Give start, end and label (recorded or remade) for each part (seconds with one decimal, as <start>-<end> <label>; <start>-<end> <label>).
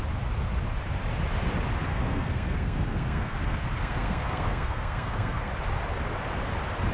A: 0.0-1.9 recorded; 1.9-5.5 remade; 5.5-6.9 recorded